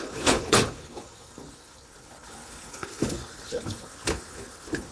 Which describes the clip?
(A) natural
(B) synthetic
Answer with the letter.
B